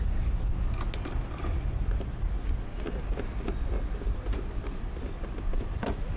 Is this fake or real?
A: real